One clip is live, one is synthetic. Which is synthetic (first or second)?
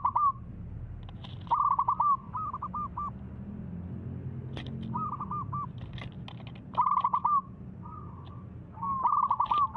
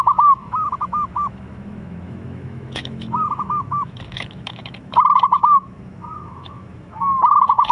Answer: second